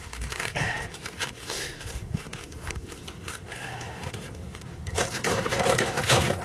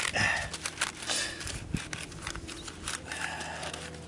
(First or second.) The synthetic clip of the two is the first